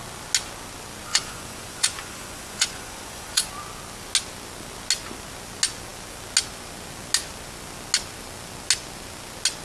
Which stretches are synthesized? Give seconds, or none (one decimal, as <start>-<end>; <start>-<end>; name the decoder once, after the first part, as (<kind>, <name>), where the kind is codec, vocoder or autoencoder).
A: 1.1-3.5 (vocoder, Vocos)